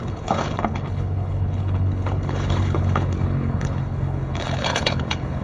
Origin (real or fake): fake